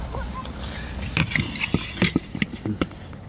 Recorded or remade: recorded